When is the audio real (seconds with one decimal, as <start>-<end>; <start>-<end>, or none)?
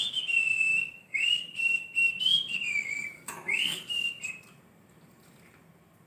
0.0-0.7; 2.1-2.5; 4.2-6.1